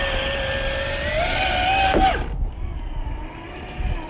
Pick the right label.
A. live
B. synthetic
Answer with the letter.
A